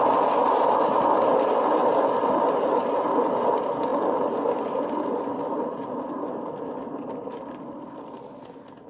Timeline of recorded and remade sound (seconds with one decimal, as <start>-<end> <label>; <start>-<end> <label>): 0.0-8.9 recorded